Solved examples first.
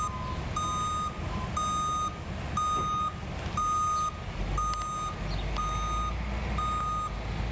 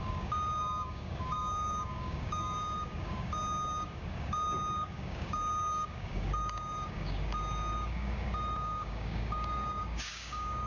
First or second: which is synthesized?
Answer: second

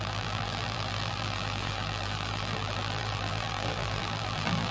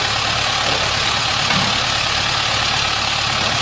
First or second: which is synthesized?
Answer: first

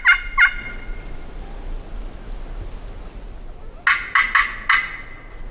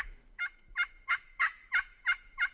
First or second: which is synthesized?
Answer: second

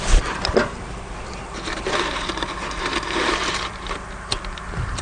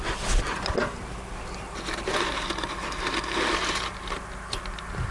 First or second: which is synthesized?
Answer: first